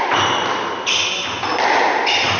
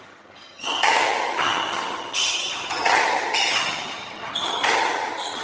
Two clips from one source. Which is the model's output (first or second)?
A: second